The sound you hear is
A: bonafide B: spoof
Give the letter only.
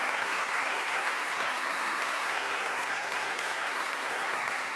B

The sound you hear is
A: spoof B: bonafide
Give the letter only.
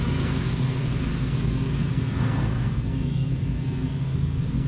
A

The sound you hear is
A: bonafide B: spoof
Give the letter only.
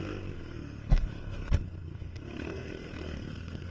B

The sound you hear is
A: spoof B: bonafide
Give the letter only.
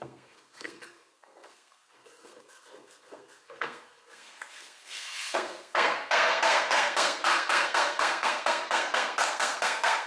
A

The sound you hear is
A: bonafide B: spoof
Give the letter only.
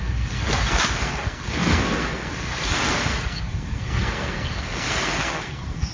B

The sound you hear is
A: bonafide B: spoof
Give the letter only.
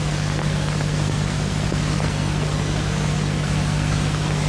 B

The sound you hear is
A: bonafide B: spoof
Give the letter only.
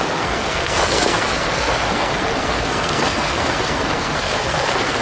B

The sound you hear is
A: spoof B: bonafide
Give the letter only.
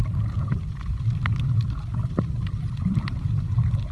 B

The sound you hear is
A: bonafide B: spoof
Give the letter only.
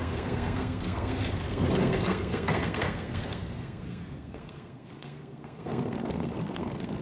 B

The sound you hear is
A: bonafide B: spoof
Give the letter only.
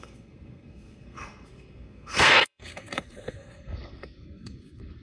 B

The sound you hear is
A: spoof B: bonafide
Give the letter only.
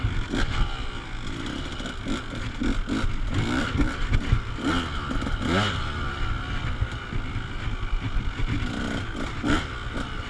B